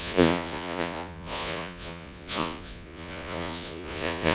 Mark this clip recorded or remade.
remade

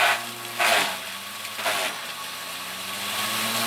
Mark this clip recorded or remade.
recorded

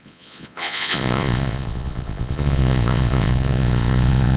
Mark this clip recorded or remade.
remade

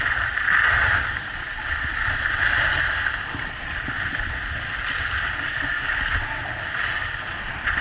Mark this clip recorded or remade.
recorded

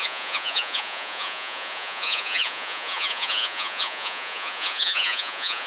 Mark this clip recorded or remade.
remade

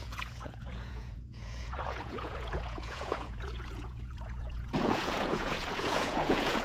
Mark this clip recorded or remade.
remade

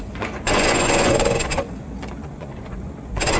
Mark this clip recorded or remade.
remade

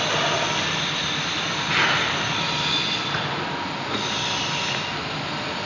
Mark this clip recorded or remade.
recorded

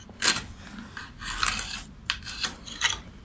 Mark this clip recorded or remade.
recorded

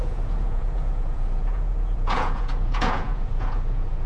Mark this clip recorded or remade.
remade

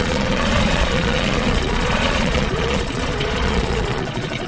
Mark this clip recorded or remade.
remade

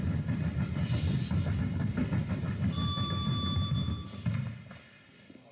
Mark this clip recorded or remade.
recorded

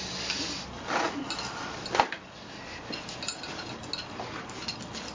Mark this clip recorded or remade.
recorded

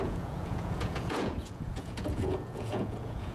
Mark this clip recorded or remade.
remade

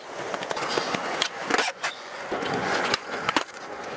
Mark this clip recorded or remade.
remade